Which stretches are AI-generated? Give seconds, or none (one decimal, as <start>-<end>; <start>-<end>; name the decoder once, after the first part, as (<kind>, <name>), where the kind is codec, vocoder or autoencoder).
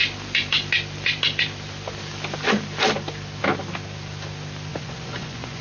4.7-5.6 (vocoder, Vocos)